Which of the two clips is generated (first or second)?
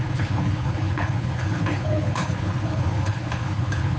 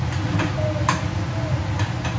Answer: first